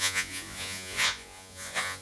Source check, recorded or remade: remade